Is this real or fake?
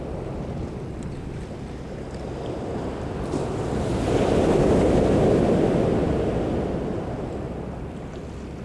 real